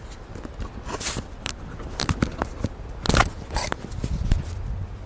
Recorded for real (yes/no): yes